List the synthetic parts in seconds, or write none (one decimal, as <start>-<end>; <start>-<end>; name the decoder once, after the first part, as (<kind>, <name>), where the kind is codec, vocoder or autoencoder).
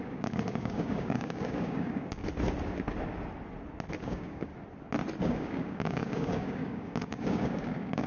0.0-2.2 (codec, DAC); 4.0-4.5; 5.2-8.1